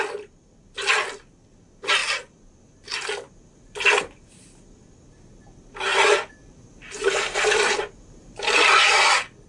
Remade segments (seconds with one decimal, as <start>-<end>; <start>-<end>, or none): 5.9-9.1